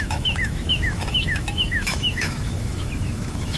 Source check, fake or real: fake